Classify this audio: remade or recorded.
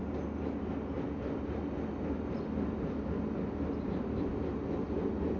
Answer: recorded